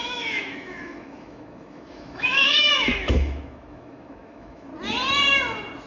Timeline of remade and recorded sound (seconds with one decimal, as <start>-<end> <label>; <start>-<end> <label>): 0.0-4.7 remade; 4.7-5.9 recorded